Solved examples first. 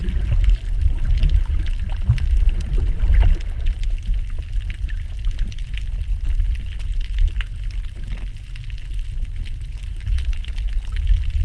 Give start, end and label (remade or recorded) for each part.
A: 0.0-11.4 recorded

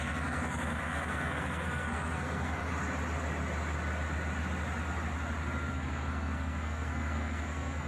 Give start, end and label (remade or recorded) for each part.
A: 0.0-2.6 remade; 2.6-5.7 recorded; 5.7-7.9 remade

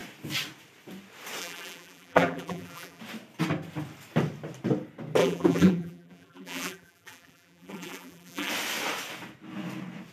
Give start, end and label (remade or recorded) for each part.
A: 0.0-1.4 recorded; 1.4-3.0 remade; 3.0-5.2 recorded; 5.2-8.5 remade; 8.5-10.1 recorded